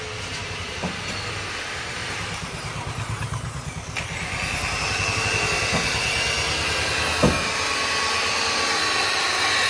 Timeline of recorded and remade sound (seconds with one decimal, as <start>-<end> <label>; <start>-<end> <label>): 0.0-0.4 recorded; 0.4-1.0 remade; 1.0-2.0 recorded; 2.0-3.7 remade; 3.7-9.7 recorded